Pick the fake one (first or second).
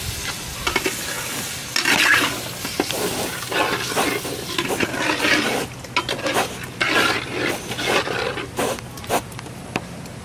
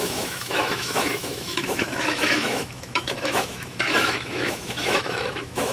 second